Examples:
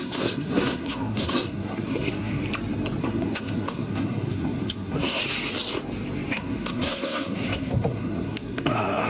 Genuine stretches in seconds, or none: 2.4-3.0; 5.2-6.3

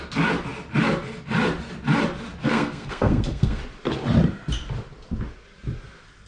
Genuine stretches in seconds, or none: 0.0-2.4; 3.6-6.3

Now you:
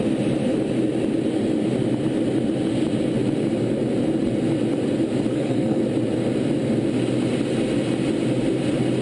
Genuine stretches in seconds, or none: 0.0-5.3; 5.8-9.0

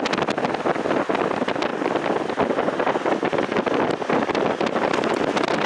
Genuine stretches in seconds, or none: 0.0-5.7